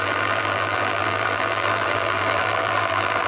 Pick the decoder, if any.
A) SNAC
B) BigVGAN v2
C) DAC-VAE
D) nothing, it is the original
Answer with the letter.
B